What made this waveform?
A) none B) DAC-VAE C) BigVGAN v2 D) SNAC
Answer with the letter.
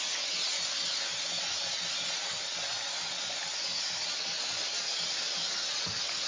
A